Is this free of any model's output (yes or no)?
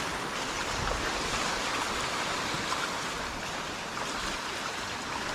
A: yes